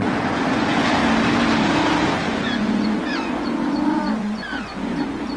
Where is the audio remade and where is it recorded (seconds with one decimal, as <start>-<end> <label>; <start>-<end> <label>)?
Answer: 0.0-1.0 remade; 1.0-2.1 recorded; 2.1-5.4 remade